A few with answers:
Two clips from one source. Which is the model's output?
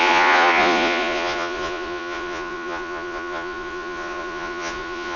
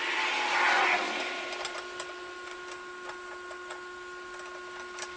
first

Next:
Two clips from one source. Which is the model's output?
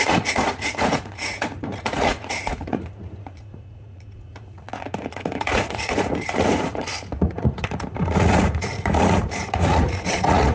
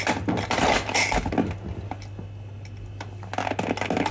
first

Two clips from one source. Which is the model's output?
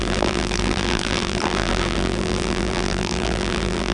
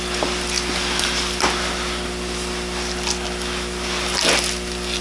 first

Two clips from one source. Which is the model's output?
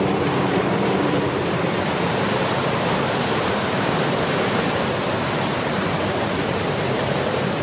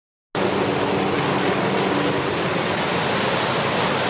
first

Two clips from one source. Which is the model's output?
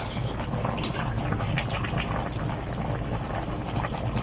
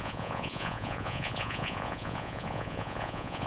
second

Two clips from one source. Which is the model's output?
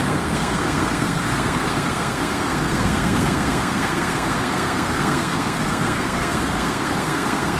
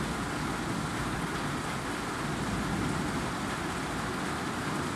first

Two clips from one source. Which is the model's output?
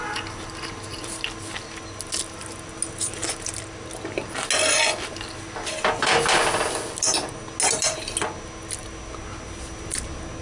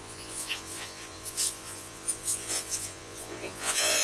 second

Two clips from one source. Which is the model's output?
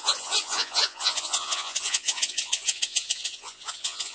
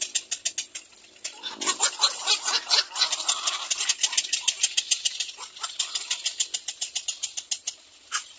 first